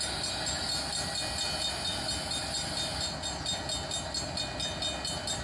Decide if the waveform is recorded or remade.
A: recorded